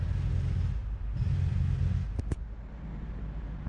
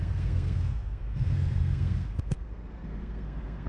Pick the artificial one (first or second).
second